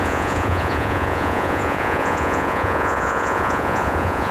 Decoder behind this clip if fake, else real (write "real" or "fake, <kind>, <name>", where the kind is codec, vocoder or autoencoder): fake, vocoder, Vocos